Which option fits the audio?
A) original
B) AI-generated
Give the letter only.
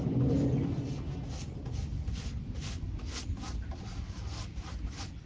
A